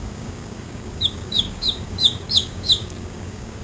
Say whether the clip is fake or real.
fake